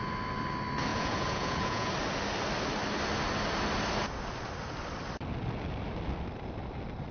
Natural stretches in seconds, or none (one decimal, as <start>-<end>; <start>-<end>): 0.0-0.9; 1.9-7.1